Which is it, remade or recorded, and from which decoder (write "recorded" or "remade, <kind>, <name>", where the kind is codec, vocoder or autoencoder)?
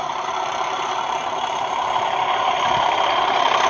remade, vocoder, BigVGAN v2